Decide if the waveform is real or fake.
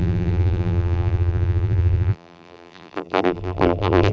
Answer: fake